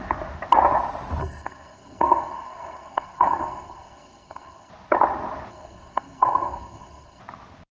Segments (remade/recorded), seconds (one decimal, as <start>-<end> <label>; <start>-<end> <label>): 0.0-1.2 recorded; 1.2-4.7 remade; 4.7-5.5 recorded; 5.5-7.2 remade; 7.2-7.7 recorded